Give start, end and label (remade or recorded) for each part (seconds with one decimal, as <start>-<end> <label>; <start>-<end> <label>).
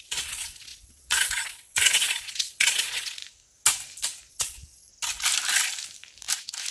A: 0.0-3.2 remade; 3.2-4.3 recorded; 4.3-4.9 remade; 4.9-6.7 recorded